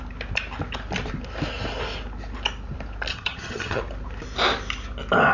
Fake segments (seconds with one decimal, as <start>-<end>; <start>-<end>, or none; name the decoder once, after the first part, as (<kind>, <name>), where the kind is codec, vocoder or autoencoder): 3.1-3.8 (vocoder, HiFi-GAN)